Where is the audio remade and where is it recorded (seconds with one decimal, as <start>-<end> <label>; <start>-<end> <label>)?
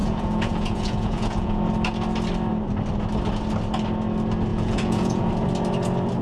0.0-1.6 remade; 1.6-4.5 recorded; 4.5-5.3 remade; 5.3-6.2 recorded